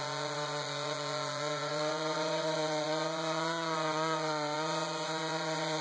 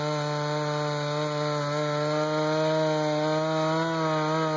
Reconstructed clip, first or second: first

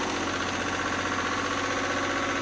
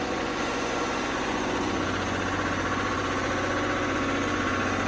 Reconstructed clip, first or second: second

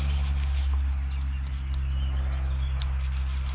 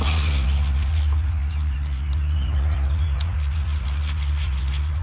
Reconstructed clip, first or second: second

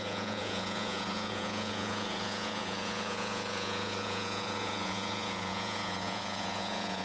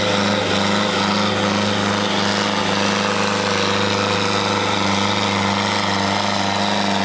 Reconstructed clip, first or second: first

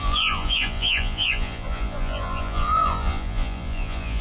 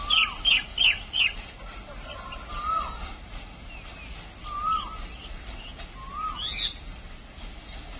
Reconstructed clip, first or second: first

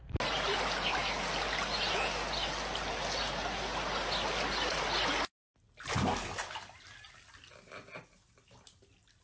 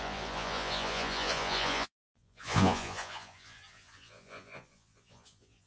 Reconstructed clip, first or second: second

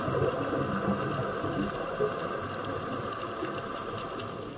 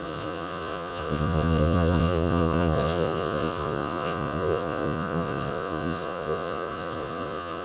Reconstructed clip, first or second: second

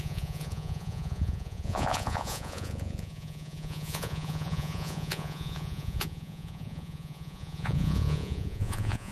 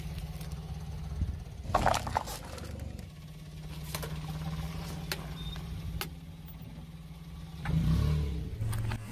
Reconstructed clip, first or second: first